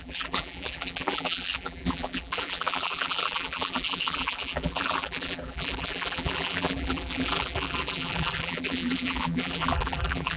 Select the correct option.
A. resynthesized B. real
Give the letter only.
A